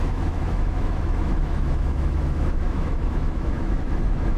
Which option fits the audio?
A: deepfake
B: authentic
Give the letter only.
A